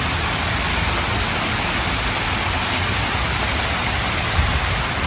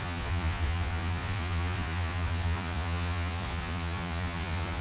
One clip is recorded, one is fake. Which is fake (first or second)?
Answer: second